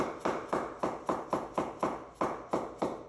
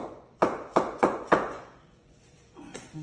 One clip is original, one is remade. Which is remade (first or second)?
second